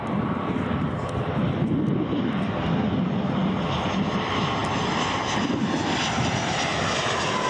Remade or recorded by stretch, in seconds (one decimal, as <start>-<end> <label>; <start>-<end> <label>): 0.0-7.5 recorded